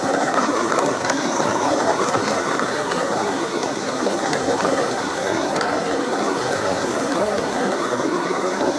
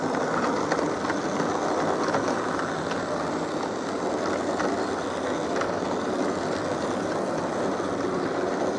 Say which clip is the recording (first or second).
second